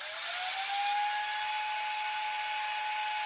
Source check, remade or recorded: recorded